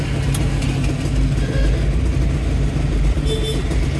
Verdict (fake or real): real